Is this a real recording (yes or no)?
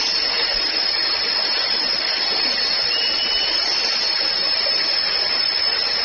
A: yes